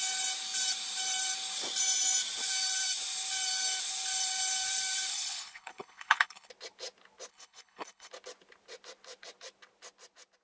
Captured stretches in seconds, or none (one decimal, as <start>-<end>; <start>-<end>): 0.0-5.1; 6.5-7.3; 8.1-10.4